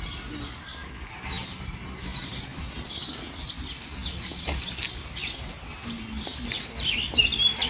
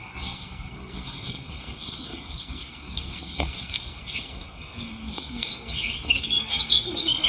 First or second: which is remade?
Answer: second